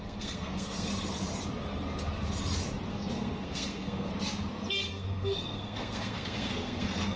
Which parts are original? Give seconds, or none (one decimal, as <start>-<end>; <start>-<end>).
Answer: 0.9-2.9; 4.1-4.9